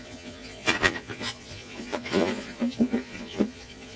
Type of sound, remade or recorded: remade